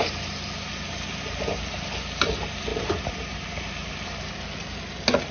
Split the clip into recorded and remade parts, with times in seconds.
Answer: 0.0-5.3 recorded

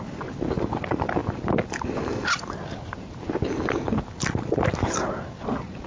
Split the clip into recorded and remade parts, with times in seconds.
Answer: 0.0-5.9 recorded

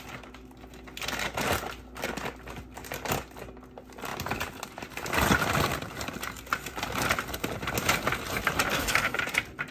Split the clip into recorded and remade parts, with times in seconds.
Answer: 0.0-8.7 recorded; 8.7-9.2 remade; 9.2-9.7 recorded

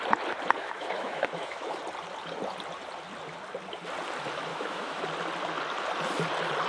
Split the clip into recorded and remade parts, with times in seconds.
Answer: 0.0-0.6 recorded; 0.6-1.8 remade; 1.8-4.5 recorded; 4.5-5.0 remade; 5.0-6.7 recorded

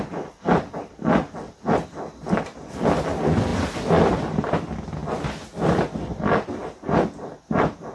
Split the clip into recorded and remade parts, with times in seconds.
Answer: 0.0-7.9 recorded

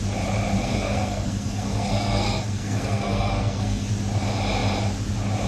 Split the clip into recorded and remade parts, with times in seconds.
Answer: 0.0-0.6 recorded; 0.6-3.9 remade; 3.9-5.5 recorded

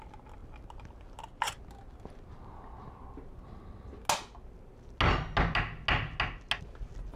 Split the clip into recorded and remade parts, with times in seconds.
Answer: 0.0-7.2 recorded

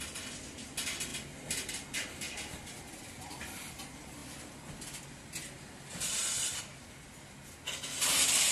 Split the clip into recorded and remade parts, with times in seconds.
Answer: 0.0-8.5 recorded